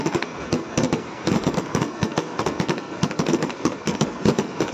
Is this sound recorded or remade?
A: remade